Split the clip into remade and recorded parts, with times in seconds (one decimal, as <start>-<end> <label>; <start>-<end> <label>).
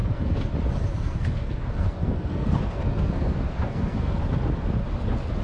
0.0-0.5 remade; 0.5-0.9 recorded; 0.9-4.1 remade; 4.1-5.4 recorded